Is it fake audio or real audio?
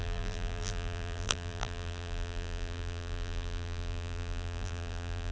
fake